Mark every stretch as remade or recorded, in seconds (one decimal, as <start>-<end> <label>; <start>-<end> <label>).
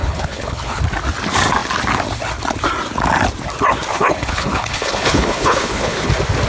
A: 0.0-0.8 remade; 0.8-3.9 recorded; 3.9-6.1 remade; 6.1-6.5 recorded